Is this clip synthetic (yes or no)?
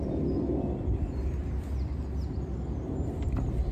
no